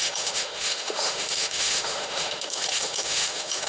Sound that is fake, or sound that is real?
fake